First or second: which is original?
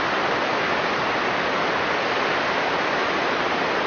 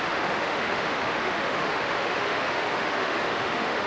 first